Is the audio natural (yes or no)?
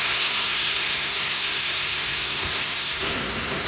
no